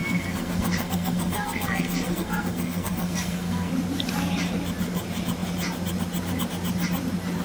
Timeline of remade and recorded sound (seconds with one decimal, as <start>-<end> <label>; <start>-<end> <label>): 0.0-3.7 remade; 3.7-7.4 recorded

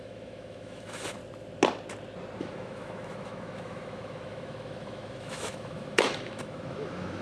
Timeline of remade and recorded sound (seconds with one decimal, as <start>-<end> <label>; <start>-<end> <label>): 0.0-1.2 remade; 1.2-2.4 recorded; 2.4-7.2 remade

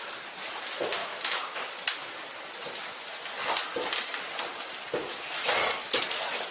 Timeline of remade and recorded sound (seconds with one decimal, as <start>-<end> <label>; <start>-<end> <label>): 0.0-1.0 recorded; 1.0-1.7 remade; 1.7-6.5 recorded

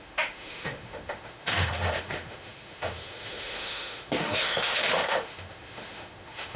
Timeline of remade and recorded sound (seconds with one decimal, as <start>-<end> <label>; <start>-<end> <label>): 0.0-6.6 remade

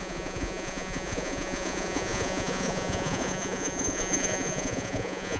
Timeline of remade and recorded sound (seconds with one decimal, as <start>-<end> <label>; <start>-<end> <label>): 0.0-5.4 remade

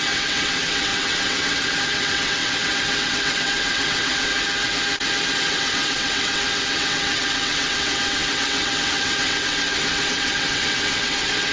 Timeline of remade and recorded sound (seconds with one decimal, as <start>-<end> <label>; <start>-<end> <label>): 0.0-4.3 remade; 4.3-5.4 recorded; 5.4-11.5 remade

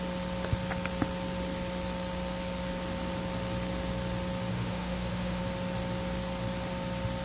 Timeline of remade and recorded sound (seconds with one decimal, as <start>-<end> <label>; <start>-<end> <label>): 0.0-4.5 recorded; 4.5-5.4 remade; 5.4-7.2 recorded

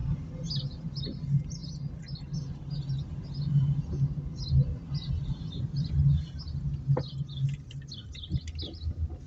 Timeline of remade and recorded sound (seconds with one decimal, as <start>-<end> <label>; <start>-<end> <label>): 0.0-9.3 recorded